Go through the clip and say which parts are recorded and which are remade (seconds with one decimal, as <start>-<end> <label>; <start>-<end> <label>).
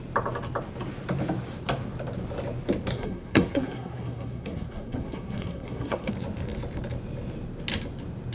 0.0-2.9 recorded; 2.9-6.1 remade; 6.1-8.3 recorded